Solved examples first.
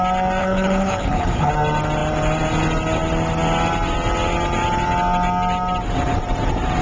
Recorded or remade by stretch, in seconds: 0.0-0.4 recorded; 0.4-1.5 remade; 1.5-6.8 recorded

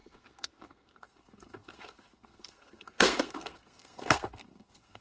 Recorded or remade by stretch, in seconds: 0.0-5.0 remade